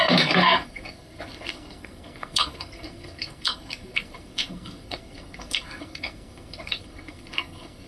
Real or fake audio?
fake